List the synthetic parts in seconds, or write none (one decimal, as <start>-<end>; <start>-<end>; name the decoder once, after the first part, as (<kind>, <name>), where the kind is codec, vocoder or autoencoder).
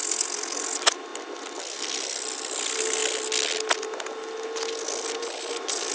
0.0-1.1 (vocoder, BigVGAN v2); 2.4-3.0; 5.2-5.9